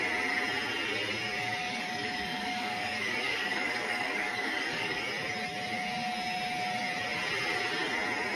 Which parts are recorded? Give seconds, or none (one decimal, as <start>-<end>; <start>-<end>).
0.0-1.6; 5.0-8.3